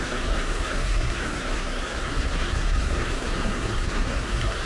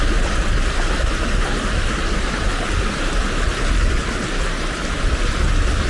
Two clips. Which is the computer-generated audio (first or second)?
first